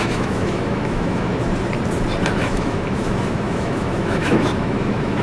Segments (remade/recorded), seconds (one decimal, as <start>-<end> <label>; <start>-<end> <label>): 0.0-1.3 remade; 1.3-2.4 recorded; 2.4-5.2 remade